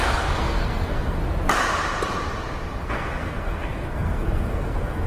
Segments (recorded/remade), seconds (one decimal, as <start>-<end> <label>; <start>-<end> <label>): 0.0-1.2 remade; 1.2-2.8 recorded; 2.8-5.1 remade